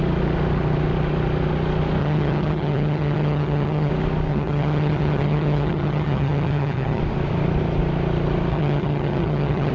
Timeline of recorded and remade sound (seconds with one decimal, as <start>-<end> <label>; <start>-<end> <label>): 0.0-2.0 recorded; 2.0-3.9 remade; 3.9-4.3 recorded; 4.3-7.0 remade; 7.0-8.5 recorded; 8.5-9.7 remade

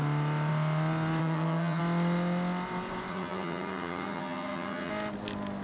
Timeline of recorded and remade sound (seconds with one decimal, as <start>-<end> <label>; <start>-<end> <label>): 0.0-1.2 recorded; 1.2-1.8 remade; 1.8-3.1 recorded; 3.1-4.9 remade; 4.9-5.6 recorded